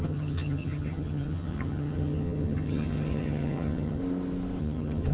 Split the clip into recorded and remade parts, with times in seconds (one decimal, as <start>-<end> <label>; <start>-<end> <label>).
0.0-4.0 remade; 4.0-4.6 recorded; 4.6-5.1 remade

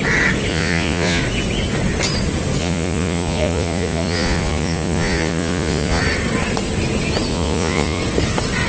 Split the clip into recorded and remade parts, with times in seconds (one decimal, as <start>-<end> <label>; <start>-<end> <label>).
0.0-0.5 recorded; 0.5-1.2 remade; 1.2-2.6 recorded; 2.6-6.0 remade; 6.0-7.3 recorded; 7.3-8.0 remade; 8.0-8.7 recorded

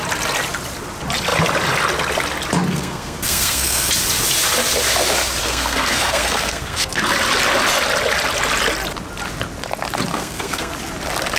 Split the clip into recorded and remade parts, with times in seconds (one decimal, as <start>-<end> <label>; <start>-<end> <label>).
0.0-2.7 recorded; 2.7-3.9 remade; 3.9-5.4 recorded; 5.4-7.0 remade; 7.0-10.1 recorded; 10.1-10.7 remade; 10.7-11.4 recorded

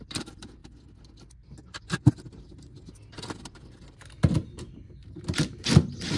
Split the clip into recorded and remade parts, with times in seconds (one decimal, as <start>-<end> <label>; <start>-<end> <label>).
0.0-0.6 remade; 0.6-4.3 recorded; 4.3-6.2 remade

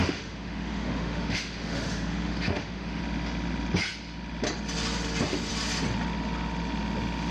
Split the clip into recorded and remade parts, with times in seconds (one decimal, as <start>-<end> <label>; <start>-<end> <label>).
0.0-3.0 remade; 3.0-7.3 recorded